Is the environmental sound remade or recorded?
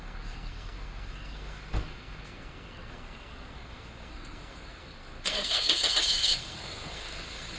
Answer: remade